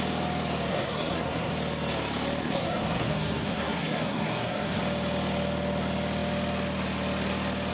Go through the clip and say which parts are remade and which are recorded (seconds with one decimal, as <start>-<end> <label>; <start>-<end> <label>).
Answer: 0.0-0.7 recorded; 0.7-1.5 remade; 1.5-2.4 recorded; 2.4-4.8 remade; 4.8-7.7 recorded